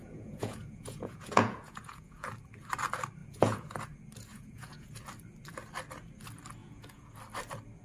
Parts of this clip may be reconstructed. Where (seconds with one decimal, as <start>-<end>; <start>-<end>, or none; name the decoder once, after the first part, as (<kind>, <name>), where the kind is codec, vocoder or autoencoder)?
0.0-2.3 (vocoder, Vocos); 3.2-3.8; 4.3-4.9; 6.6-7.1